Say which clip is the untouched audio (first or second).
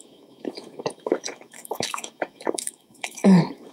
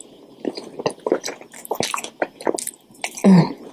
second